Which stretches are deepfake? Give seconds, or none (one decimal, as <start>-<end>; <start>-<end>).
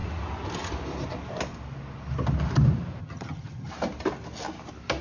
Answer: 3.0-3.7